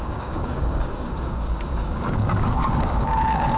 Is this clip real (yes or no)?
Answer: no